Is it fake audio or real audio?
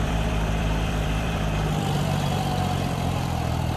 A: fake